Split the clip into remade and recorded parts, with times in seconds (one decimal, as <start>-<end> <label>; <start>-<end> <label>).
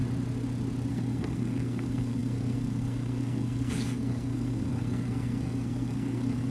0.0-0.9 recorded; 0.9-6.5 remade